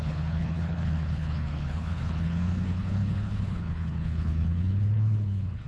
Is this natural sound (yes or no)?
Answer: no